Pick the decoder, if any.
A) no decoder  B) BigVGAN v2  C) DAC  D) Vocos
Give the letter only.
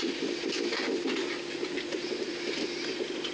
A